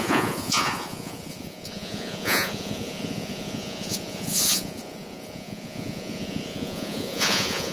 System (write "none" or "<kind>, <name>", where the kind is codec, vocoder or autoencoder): vocoder, Vocos